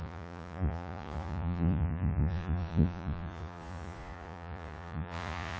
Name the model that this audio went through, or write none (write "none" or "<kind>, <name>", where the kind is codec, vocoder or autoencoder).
vocoder, Vocos